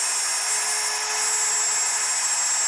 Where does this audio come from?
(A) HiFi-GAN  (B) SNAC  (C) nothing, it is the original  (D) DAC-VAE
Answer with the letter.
C